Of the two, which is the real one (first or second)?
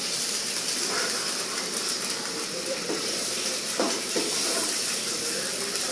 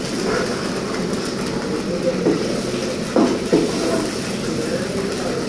second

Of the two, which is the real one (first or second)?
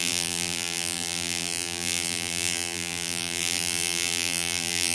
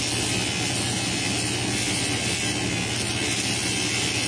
second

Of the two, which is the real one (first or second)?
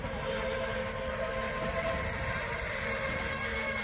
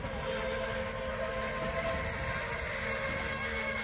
second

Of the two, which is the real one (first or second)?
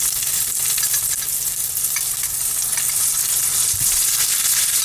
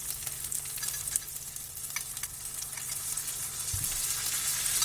second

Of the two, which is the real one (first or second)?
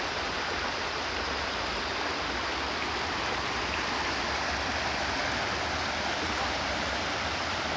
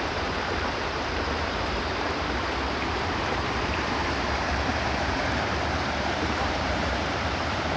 first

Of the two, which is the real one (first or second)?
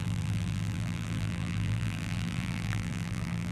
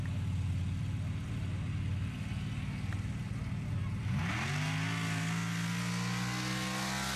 second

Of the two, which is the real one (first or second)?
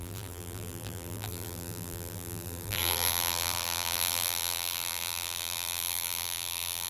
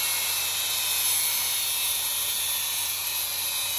second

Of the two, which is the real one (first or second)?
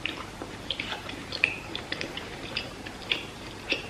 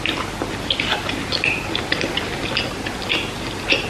second